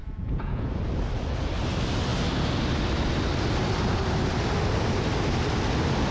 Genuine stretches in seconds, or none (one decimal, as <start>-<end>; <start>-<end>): 0.7-6.1